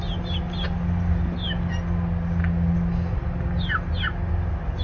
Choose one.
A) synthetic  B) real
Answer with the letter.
B